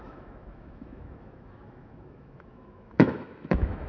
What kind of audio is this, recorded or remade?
remade